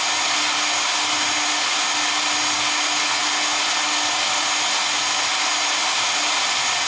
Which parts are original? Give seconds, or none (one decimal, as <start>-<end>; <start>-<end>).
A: 0.0-6.9